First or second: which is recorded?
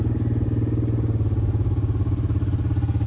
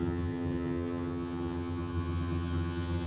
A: first